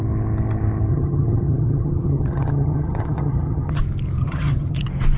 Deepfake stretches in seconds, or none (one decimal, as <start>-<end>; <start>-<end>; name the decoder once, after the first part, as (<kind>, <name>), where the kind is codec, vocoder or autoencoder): 0.9-3.8 (vocoder, HiFi-GAN); 4.2-4.8